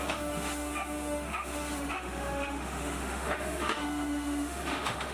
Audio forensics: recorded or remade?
remade